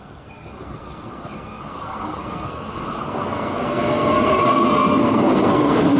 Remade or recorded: remade